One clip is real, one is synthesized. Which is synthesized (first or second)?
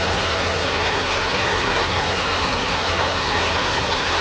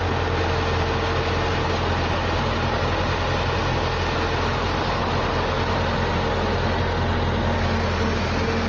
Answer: first